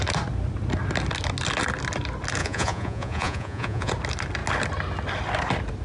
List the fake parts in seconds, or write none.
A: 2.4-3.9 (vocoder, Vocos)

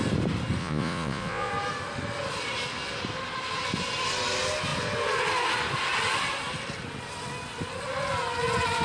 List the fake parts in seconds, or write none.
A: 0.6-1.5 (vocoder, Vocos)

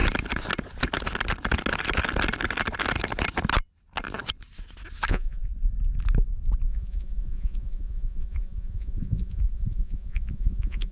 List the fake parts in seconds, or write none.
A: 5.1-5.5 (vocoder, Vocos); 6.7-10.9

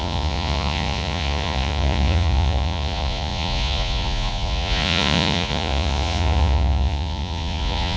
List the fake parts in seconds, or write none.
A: 0.0-8.0 (vocoder, Vocos)

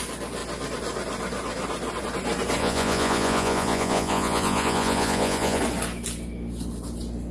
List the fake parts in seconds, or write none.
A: 2.6-5.6 (vocoder, Vocos)